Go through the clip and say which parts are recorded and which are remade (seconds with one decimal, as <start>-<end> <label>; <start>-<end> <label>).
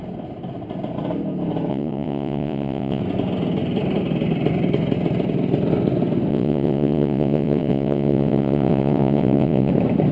0.0-1.7 recorded; 1.7-3.0 remade; 3.0-6.3 recorded; 6.3-9.7 remade; 9.7-10.1 recorded